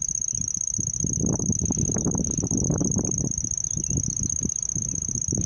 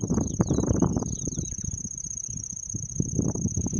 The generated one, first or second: second